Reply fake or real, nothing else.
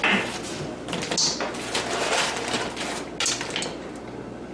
real